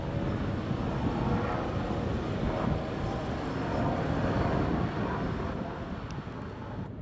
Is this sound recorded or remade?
recorded